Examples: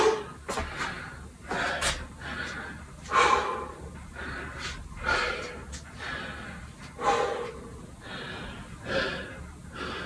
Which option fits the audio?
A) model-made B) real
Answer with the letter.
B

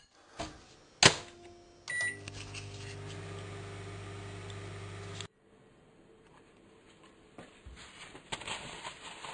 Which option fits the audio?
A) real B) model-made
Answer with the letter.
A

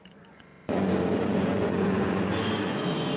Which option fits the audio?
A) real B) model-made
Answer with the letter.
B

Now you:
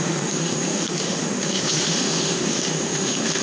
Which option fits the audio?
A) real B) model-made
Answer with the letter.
B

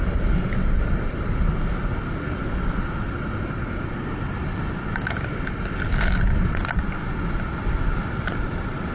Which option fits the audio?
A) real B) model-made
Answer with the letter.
A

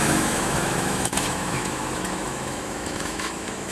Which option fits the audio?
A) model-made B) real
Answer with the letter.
A